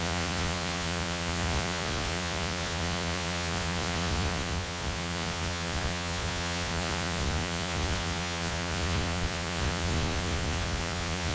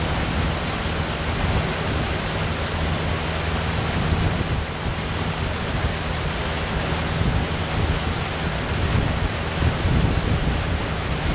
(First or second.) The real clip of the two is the second